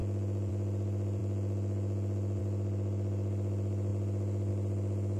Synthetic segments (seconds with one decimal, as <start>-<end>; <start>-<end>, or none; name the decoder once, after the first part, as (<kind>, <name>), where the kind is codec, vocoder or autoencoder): none